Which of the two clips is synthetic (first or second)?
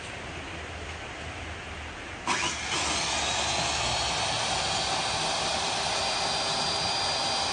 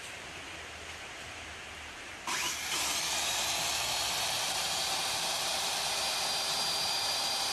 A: second